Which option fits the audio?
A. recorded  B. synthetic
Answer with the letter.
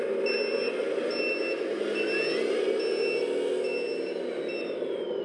A